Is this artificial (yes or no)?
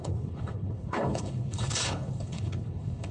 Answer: yes